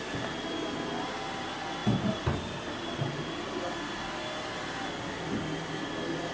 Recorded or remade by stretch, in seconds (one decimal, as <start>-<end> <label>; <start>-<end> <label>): 0.0-6.3 recorded